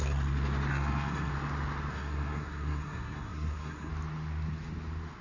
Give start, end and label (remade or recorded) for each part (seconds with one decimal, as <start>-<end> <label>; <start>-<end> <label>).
0.0-0.7 recorded; 0.7-1.3 remade; 1.3-1.9 recorded; 1.9-3.9 remade; 3.9-5.2 recorded